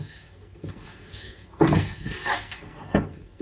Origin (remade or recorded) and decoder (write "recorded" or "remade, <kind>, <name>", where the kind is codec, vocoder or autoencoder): remade, codec, SNAC